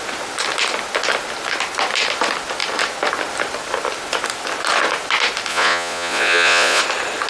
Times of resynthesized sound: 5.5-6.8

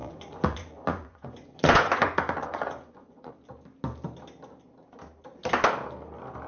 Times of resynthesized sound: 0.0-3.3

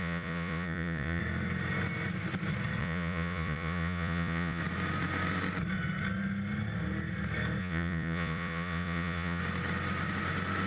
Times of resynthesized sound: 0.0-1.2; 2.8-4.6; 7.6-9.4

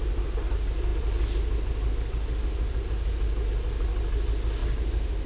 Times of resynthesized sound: none

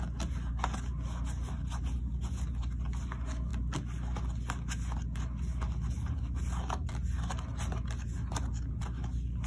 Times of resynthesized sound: none

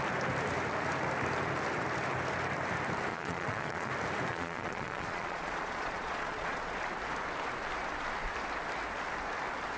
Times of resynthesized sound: 3.1-3.9; 4.3-6.8